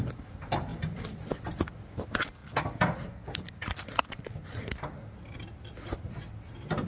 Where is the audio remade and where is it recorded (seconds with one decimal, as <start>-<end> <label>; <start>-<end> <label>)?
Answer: 0.0-0.7 recorded; 0.7-1.5 remade; 1.5-6.9 recorded